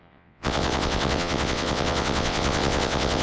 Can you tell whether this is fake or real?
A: fake